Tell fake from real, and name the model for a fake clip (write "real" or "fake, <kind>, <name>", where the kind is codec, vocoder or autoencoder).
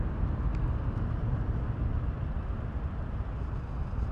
real